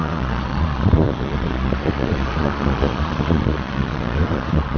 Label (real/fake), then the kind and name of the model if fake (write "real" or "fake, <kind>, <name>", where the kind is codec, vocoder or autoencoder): fake, vocoder, Vocos